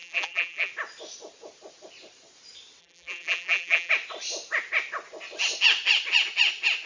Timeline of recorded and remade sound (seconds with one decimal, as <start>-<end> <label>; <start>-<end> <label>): 0.0-0.7 remade; 0.7-2.8 recorded; 2.8-3.9 remade; 3.9-6.9 recorded